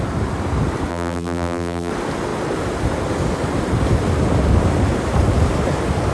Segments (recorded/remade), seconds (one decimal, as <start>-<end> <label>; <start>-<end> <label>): 0.0-0.9 recorded; 0.9-1.9 remade; 1.9-6.1 recorded